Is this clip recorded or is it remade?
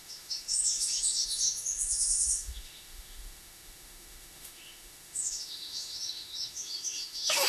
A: remade